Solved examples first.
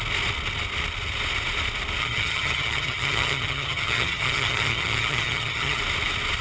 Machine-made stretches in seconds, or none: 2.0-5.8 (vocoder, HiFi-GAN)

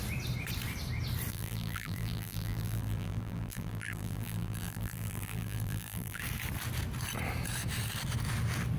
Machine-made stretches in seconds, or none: 1.3-6.2 (vocoder, BigVGAN v2)

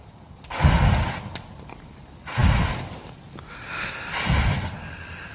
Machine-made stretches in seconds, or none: none

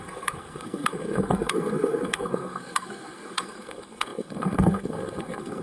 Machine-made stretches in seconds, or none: 0.0-5.6 (codec, SNAC)